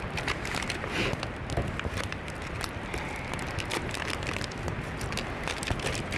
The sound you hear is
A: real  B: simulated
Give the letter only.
A